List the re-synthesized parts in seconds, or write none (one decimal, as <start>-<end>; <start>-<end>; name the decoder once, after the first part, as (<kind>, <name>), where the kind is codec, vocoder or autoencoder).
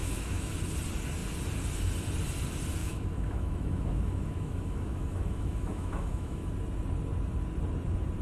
0.0-0.5 (autoencoder, DAC-VAE); 2.8-6.5